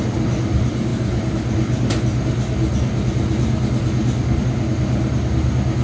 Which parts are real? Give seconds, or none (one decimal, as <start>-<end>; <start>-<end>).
0.0-5.8